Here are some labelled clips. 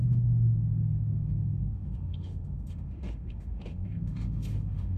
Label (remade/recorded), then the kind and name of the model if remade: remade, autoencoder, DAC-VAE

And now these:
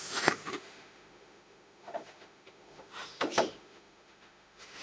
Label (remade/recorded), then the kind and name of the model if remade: remade, autoencoder, DAC-VAE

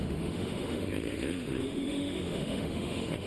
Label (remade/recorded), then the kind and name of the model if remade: remade, autoencoder, DAC-VAE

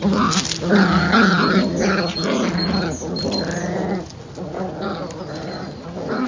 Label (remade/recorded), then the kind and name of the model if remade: recorded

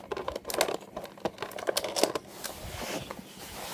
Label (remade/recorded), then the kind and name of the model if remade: recorded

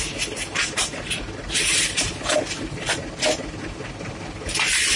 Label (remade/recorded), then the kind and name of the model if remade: recorded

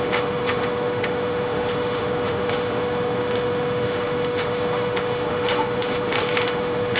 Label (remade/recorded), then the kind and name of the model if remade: remade, autoencoder, DAC-VAE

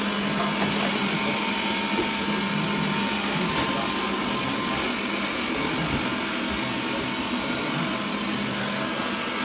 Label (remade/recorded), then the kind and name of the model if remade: recorded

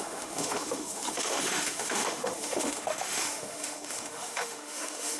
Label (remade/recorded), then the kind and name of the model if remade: remade, autoencoder, DAC-VAE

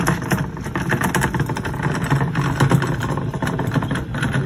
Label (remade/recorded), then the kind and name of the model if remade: recorded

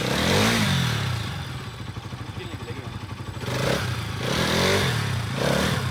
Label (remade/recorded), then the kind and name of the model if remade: recorded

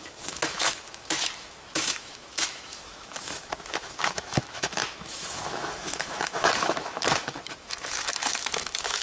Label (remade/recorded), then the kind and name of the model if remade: remade, autoencoder, DAC-VAE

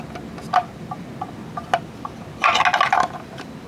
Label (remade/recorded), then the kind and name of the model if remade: recorded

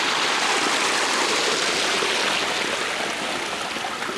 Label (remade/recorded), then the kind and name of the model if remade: recorded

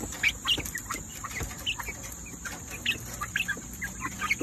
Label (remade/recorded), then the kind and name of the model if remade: recorded